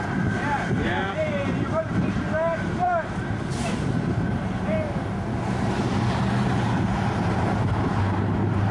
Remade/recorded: remade